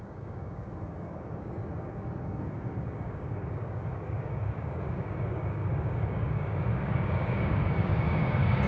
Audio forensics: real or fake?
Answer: fake